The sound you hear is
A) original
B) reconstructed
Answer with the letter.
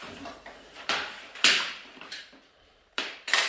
B